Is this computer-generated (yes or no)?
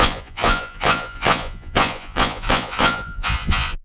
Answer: yes